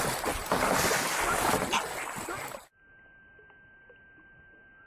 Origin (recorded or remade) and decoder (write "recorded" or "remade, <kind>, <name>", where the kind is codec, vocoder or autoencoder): recorded